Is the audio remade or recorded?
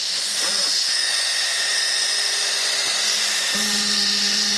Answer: remade